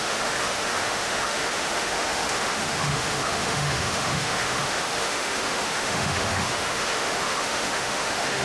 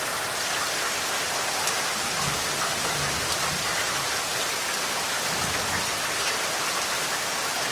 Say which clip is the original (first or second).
second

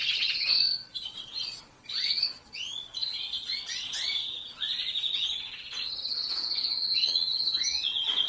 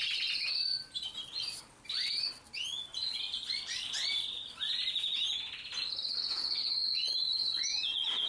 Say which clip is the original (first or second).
second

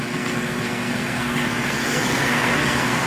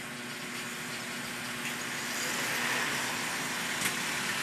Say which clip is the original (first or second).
second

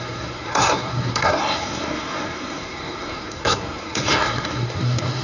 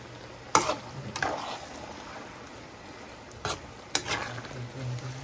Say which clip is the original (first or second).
second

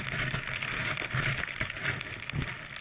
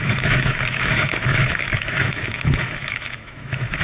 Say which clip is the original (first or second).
first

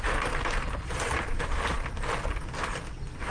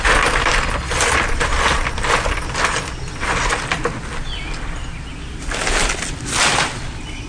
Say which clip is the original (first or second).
second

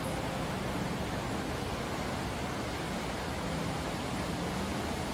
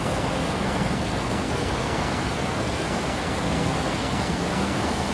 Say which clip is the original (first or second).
first